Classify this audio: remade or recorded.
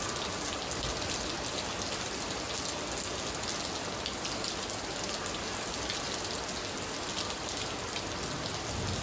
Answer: recorded